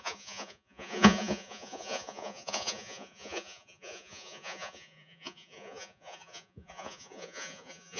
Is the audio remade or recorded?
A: remade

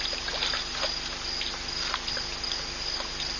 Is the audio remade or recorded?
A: recorded